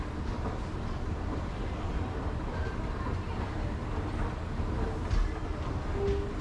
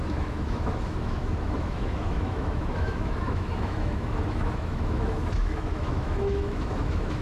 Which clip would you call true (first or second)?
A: first